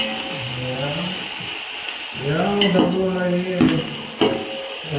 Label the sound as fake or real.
real